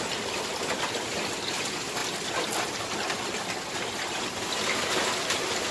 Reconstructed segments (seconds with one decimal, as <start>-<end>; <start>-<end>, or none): none